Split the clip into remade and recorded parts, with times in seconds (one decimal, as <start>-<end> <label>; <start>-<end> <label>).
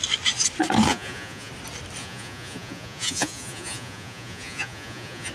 0.0-0.9 recorded; 0.9-1.5 remade; 1.5-2.0 recorded; 2.0-5.3 remade